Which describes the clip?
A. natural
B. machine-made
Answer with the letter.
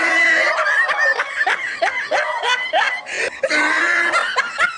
A